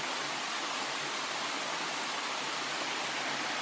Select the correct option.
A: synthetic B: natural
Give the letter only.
B